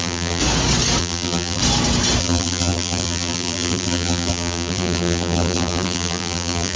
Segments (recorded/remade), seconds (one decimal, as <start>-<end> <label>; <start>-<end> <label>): 0.0-0.4 remade; 0.4-1.0 recorded; 1.0-1.6 remade; 1.6-2.2 recorded; 2.2-6.8 remade